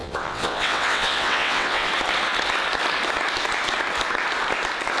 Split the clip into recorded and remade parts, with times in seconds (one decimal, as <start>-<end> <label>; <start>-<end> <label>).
0.0-1.9 remade; 1.9-5.0 recorded